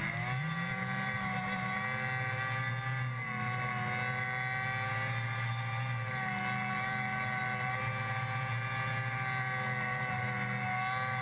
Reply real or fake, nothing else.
real